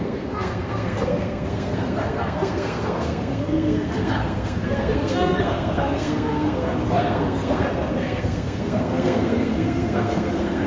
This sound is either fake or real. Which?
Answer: fake